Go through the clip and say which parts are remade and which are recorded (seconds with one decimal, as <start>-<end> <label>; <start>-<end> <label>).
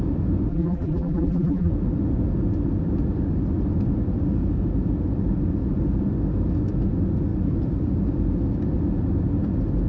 0.0-0.5 recorded; 0.5-1.7 remade; 1.7-9.9 recorded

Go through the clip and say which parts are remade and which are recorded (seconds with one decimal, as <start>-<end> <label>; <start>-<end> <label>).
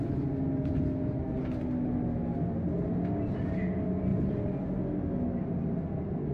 0.0-4.1 recorded; 4.1-4.8 remade; 4.8-6.3 recorded